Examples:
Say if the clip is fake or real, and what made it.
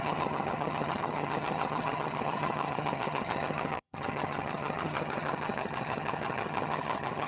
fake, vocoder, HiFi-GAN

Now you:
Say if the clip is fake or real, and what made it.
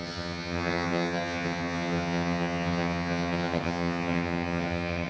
fake, vocoder, HiFi-GAN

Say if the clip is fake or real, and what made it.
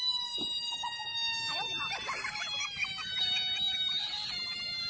real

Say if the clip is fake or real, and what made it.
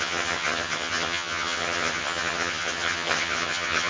fake, vocoder, HiFi-GAN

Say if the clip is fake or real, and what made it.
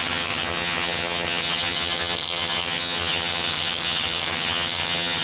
fake, vocoder, HiFi-GAN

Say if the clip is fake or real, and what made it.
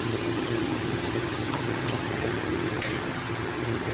fake, vocoder, HiFi-GAN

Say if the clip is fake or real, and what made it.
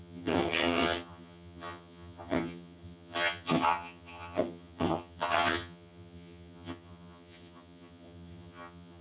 fake, vocoder, HiFi-GAN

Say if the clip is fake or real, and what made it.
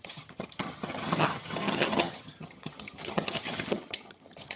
fake, vocoder, HiFi-GAN